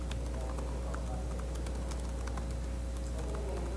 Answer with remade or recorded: recorded